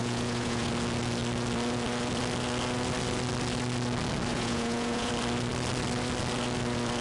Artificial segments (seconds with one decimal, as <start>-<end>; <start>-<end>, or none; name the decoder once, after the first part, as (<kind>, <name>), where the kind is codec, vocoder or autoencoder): 0.0-0.7 (vocoder, Vocos); 4.3-5.1